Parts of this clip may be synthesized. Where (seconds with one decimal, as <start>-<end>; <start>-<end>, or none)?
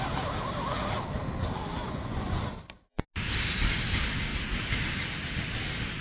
1.8-2.4